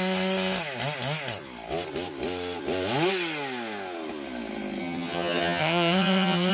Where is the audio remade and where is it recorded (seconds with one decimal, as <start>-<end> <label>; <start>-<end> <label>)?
0.0-4.8 recorded; 4.8-6.5 remade